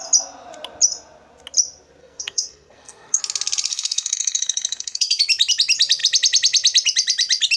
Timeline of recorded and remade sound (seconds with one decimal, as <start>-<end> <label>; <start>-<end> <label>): 0.0-2.0 recorded; 2.0-3.2 remade; 3.2-3.7 recorded; 3.7-5.2 remade; 5.2-7.6 recorded